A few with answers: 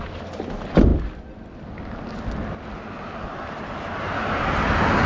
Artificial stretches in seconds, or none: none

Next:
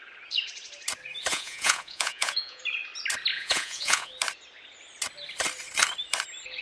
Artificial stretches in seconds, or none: 1.3-2.6 (vocoder, Vocos); 3.3-4.1